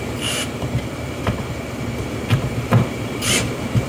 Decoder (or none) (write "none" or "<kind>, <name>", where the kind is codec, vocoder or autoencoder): vocoder, BigVGAN v2